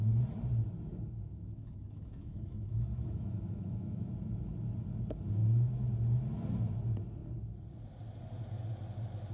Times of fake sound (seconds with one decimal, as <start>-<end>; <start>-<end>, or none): 0.9-4.1